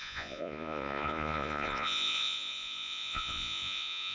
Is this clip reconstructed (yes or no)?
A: yes